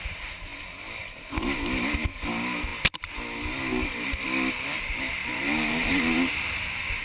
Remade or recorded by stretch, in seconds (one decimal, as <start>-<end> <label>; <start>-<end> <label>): 0.0-5.2 recorded; 5.2-6.6 remade; 6.6-7.0 recorded